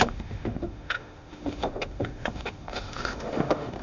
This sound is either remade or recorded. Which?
remade